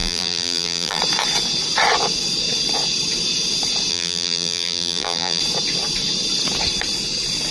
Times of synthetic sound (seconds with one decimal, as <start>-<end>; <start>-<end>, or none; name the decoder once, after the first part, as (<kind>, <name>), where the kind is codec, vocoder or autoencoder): 0.0-1.0 (vocoder, BigVGAN v2); 3.9-5.4